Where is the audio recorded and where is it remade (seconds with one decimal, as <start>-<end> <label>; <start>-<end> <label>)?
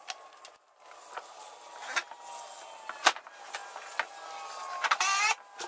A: 0.0-5.7 recorded